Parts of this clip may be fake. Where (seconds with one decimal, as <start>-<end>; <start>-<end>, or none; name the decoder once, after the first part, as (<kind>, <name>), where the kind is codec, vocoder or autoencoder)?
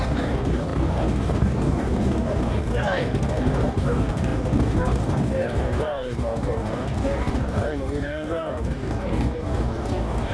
0.0-10.3 (codec, DAC)